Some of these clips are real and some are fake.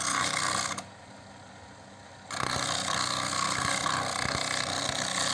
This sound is real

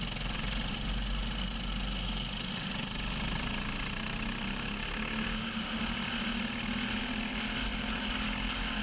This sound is real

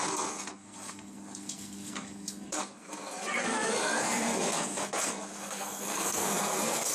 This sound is fake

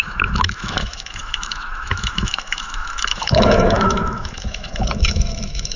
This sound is fake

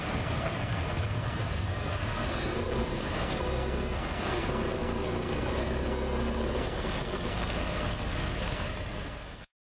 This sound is fake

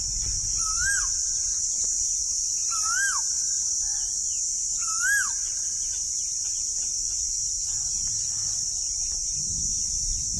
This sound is real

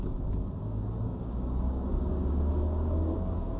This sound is fake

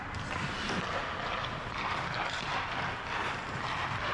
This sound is real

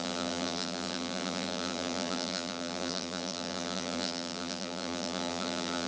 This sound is fake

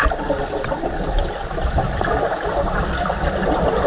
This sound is real